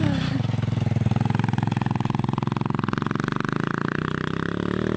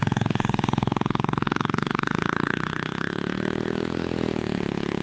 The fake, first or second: second